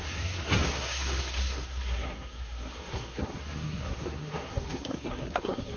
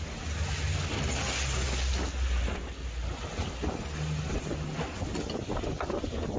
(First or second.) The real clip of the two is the second